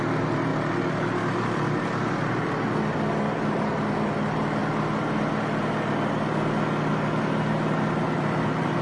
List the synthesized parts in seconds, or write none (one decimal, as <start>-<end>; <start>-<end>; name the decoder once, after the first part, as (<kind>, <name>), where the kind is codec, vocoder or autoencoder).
0.0-0.5 (vocoder, BigVGAN v2); 3.0-4.6; 6.9-8.8